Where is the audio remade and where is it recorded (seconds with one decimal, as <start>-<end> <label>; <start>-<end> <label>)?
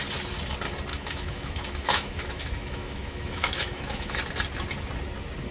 0.0-0.9 recorded; 0.9-4.2 remade; 4.2-5.5 recorded